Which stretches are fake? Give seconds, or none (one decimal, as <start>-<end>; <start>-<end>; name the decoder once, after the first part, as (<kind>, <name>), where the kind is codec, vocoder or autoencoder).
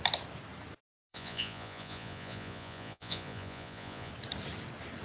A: 1.1-4.1 (vocoder, Vocos)